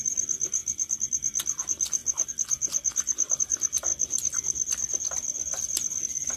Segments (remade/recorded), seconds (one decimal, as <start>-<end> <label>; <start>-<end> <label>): 0.0-2.0 remade; 2.0-3.4 recorded; 3.4-3.9 remade; 3.9-6.0 recorded; 6.0-6.4 remade